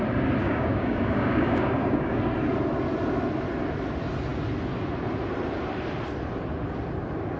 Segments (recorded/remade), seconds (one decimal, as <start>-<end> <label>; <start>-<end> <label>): 0.0-0.4 recorded; 0.4-2.2 remade; 2.2-7.4 recorded